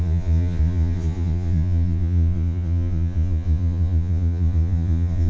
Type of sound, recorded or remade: remade